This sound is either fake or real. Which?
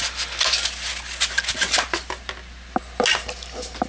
real